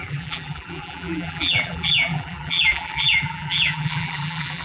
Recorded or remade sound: remade